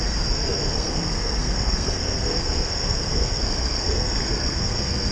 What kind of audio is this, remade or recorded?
remade